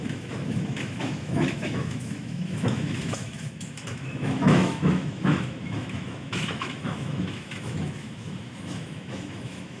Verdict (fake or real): fake